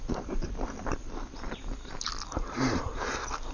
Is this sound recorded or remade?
recorded